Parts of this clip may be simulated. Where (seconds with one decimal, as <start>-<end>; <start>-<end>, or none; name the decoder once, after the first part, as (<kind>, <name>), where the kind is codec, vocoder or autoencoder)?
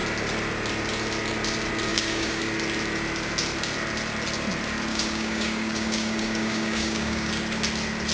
1.9-2.4 (codec, DAC); 4.9-7.3